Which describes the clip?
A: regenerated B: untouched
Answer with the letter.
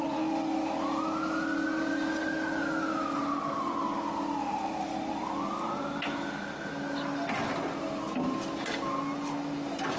B